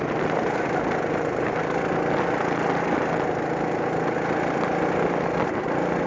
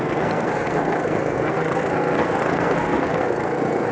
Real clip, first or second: first